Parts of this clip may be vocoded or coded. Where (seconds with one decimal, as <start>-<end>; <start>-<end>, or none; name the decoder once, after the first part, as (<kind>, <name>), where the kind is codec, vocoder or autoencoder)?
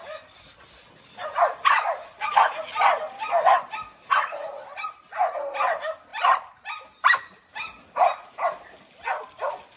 none